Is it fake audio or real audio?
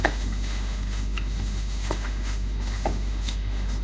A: fake